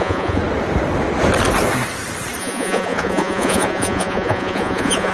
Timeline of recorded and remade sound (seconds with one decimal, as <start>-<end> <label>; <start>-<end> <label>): 0.0-0.4 remade; 0.4-2.4 recorded; 2.4-5.1 remade